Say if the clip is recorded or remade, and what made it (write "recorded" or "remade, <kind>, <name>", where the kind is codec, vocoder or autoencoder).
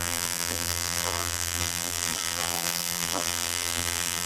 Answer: remade, vocoder, BigVGAN v2